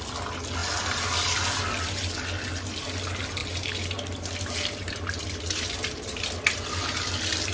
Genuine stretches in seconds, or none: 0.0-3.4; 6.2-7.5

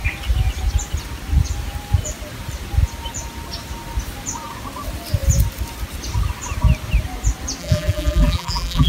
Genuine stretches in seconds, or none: 0.0-7.6

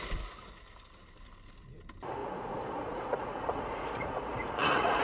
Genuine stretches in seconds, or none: 0.0-2.2

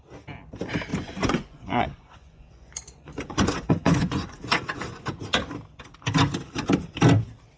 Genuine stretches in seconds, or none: 0.0-0.9; 5.2-7.6

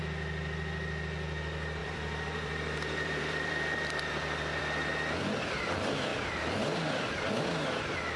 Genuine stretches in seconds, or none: 0.0-1.8; 4.6-8.2

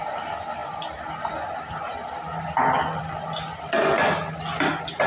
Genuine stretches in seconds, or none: 0.0-5.1

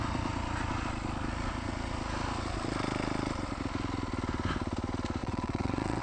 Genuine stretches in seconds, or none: 0.0-5.2

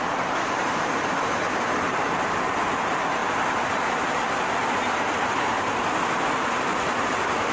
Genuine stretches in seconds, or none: 0.0-7.5